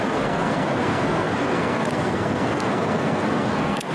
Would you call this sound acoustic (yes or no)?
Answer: no